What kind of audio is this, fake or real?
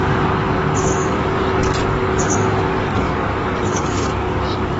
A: fake